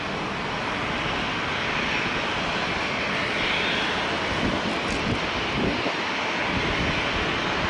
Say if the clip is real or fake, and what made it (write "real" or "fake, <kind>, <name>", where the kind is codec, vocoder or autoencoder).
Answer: real